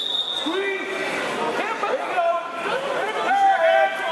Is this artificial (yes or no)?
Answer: no